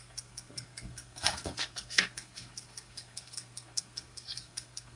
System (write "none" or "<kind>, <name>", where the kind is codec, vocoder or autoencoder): codec, SNAC